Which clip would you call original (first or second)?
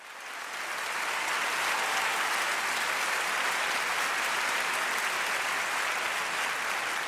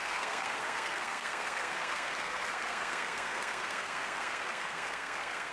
first